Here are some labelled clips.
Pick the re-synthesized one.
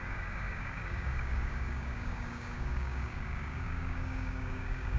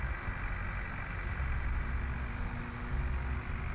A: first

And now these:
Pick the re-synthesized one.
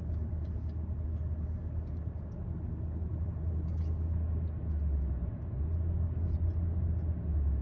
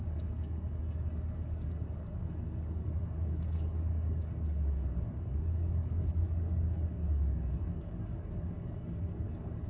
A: second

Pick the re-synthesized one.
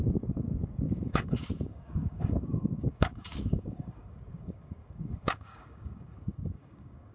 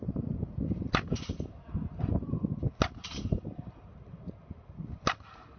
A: first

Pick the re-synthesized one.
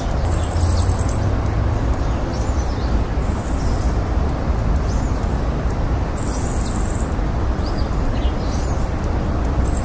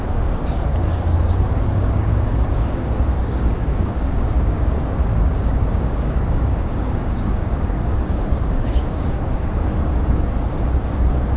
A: second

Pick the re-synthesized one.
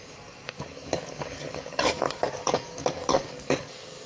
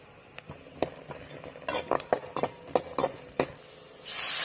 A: first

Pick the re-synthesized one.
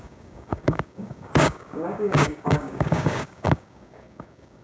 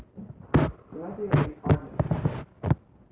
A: first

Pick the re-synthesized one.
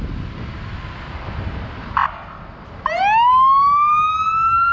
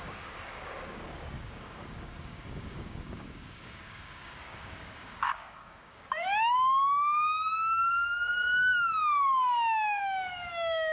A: second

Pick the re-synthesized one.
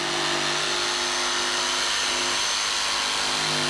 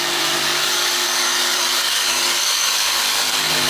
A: second